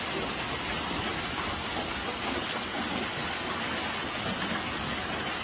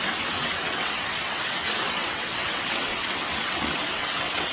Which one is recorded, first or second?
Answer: first